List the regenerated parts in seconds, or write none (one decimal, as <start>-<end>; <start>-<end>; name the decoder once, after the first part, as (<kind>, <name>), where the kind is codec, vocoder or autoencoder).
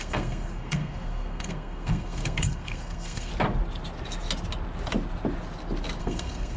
0.0-3.3 (codec, SNAC); 6.0-6.6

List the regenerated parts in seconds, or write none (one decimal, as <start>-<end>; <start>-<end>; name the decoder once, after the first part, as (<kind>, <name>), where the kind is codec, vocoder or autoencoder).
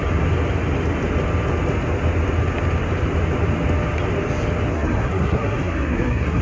4.7-6.4 (codec, SNAC)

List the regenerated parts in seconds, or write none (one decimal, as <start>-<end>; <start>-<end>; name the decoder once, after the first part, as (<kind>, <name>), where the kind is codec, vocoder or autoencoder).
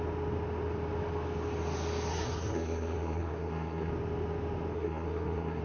2.1-3.9 (codec, SNAC); 4.7-5.6